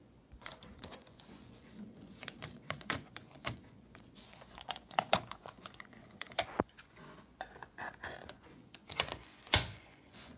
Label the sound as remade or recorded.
remade